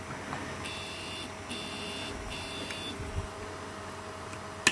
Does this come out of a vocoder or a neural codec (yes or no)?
no